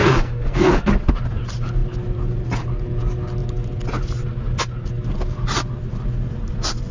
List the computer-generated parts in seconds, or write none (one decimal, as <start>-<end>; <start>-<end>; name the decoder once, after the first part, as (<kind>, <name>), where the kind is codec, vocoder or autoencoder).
0.0-0.9 (codec, SNAC)